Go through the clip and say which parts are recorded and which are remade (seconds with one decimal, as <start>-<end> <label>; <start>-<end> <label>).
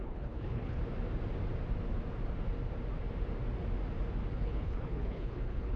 0.0-0.8 remade; 0.8-4.3 recorded; 4.3-5.8 remade